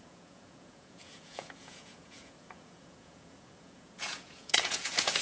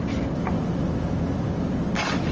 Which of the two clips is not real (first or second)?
first